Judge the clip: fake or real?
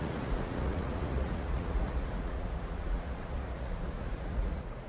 fake